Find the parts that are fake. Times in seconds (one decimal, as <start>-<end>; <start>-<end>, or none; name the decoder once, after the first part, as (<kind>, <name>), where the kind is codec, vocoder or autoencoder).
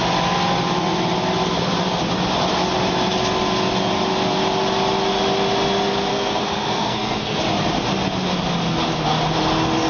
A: 6.1-7.4 (codec, SNAC)